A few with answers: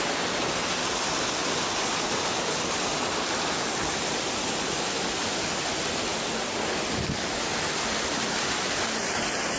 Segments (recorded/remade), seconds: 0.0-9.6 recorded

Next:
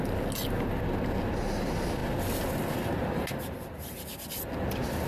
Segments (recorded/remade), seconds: 0.0-5.1 recorded